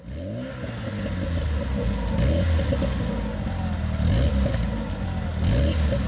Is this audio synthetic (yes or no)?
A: no